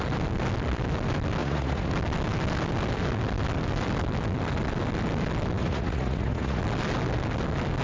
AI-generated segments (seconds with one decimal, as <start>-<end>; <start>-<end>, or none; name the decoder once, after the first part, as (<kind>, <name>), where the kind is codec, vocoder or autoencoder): 1.4-1.9 (vocoder, Vocos); 5.6-6.6